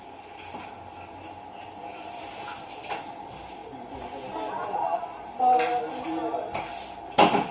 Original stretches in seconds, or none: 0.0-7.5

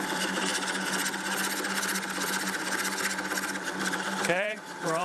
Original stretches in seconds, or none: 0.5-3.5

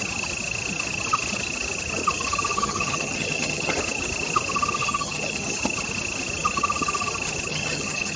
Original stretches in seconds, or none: 0.0-2.5; 3.7-4.8; 5.6-7.5

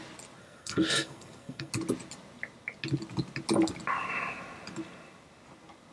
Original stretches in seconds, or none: 0.0-0.4; 1.7-5.9

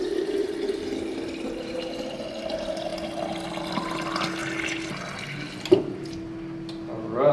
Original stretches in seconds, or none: 0.0-7.3

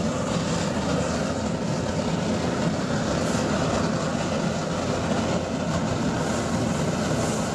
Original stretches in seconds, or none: 0.0-7.5

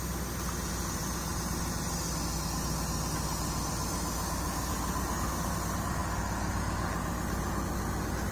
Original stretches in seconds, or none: 0.0-8.3